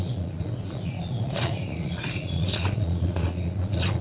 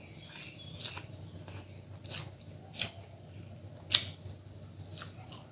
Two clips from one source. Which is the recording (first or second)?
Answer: second